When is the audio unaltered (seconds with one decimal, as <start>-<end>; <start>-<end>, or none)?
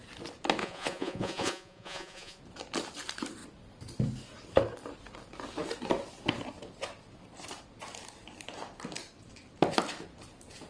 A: 0.0-0.6; 2.4-10.7